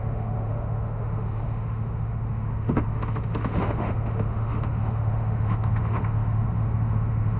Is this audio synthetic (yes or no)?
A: yes